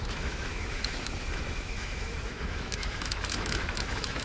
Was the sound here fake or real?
fake